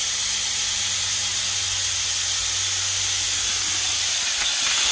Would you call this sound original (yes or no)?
yes